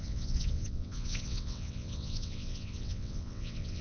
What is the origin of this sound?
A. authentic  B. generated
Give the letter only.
B